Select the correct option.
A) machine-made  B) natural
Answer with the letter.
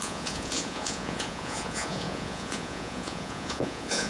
A